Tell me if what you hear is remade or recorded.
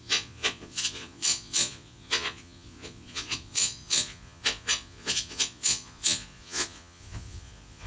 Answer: remade